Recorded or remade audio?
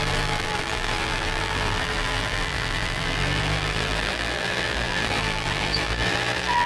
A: remade